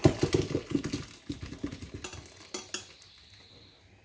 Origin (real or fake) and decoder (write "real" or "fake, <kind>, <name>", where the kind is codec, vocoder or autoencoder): real